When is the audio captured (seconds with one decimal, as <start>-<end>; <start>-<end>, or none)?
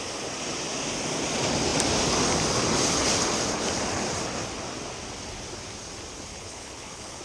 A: 0.0-6.3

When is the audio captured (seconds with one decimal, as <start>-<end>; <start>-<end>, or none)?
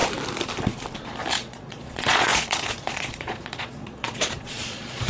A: 0.0-1.3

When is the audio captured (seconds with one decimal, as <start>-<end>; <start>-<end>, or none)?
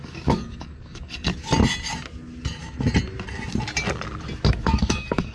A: 1.3-4.5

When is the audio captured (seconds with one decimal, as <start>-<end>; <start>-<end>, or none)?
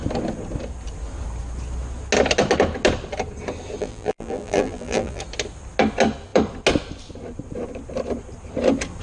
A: 0.0-3.8; 5.2-9.0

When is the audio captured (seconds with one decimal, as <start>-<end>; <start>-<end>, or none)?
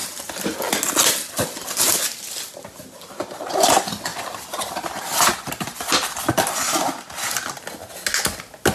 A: 0.0-8.7